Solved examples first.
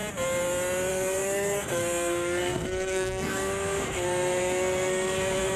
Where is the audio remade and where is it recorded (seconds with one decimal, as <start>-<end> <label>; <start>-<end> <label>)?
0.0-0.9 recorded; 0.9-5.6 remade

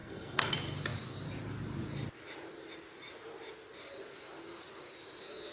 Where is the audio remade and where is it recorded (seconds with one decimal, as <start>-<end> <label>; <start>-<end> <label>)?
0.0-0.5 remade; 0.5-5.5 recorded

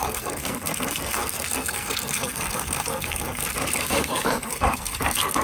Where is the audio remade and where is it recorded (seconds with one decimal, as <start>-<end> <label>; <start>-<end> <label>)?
0.0-5.4 remade